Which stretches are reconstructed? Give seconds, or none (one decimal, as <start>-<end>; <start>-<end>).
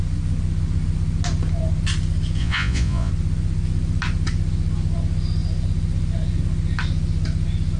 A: 2.4-3.1